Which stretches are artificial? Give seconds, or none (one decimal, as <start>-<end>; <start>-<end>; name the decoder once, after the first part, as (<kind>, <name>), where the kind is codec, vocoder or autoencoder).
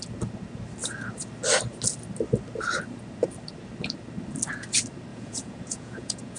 5.1-6.4 (vocoder, Vocos)